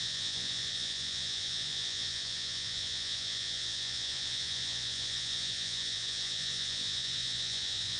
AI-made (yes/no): yes